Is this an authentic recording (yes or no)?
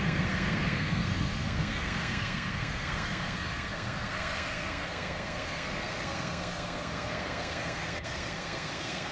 no